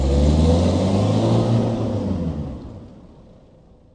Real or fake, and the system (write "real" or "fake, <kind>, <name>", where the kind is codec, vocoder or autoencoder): real